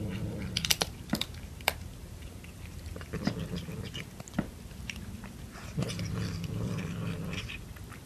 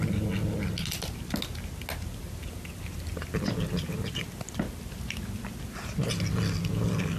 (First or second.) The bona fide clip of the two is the second